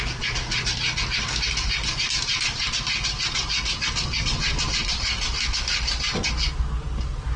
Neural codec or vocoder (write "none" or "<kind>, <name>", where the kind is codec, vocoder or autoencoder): none